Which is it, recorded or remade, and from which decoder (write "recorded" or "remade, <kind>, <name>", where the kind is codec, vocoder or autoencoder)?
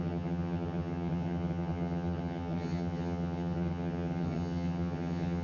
remade, vocoder, HiFi-GAN